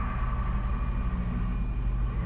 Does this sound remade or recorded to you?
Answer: recorded